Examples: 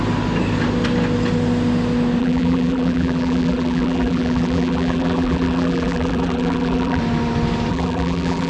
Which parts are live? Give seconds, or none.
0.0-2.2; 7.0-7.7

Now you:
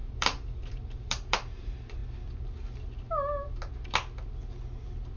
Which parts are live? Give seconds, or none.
2.0-5.2

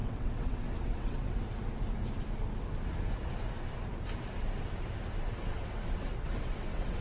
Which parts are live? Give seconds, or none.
1.3-5.3

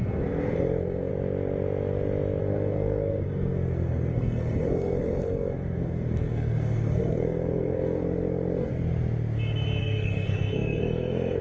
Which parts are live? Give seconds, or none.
1.1-2.4; 8.7-9.8

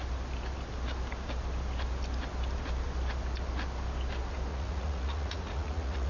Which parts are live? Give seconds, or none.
0.0-4.5